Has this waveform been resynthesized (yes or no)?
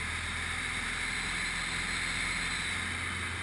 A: no